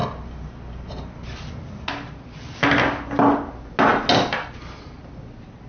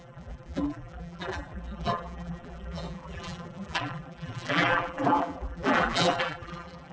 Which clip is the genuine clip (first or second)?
first